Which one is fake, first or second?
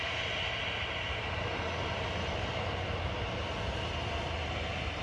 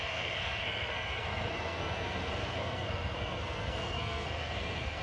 second